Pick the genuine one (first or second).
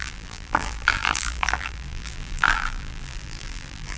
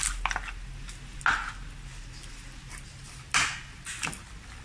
second